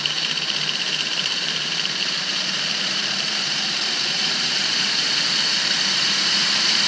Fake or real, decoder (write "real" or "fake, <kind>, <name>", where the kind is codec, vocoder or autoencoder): fake, vocoder, BigVGAN v2